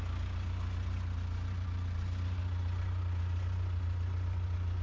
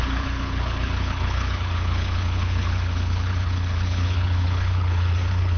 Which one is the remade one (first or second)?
second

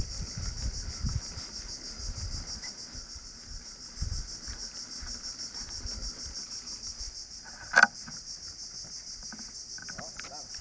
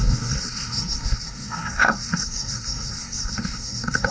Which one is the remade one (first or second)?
second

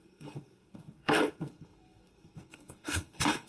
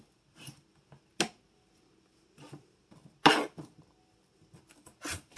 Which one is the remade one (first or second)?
first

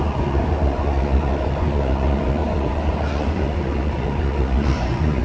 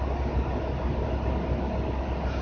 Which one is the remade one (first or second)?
first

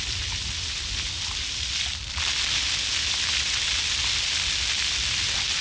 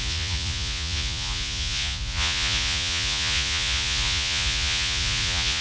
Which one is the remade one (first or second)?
second